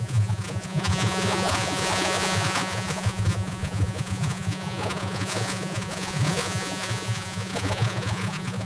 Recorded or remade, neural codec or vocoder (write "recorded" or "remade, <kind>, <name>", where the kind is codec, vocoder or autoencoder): remade, vocoder, Vocos